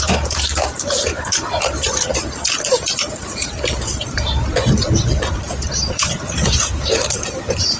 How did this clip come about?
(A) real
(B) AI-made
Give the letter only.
B